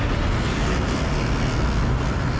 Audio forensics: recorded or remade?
recorded